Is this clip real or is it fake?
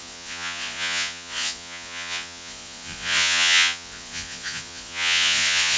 fake